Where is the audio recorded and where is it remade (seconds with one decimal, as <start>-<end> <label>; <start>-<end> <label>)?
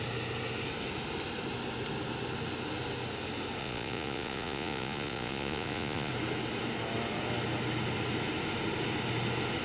0.0-3.6 recorded; 3.6-6.1 remade; 6.1-9.6 recorded